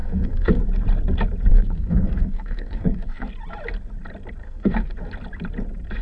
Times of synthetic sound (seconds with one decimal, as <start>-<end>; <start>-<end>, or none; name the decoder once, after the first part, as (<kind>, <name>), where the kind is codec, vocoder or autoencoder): 0.0-0.6 (codec, SNAC); 1.5-3.3; 4.4-4.9